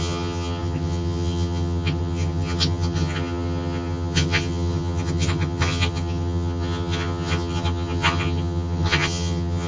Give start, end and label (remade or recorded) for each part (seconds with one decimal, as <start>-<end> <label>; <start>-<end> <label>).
0.0-9.7 remade